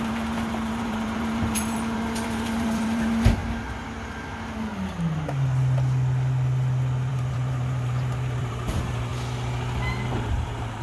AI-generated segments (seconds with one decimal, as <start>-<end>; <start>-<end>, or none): 0.0-3.4; 7.1-9.1; 10.1-10.8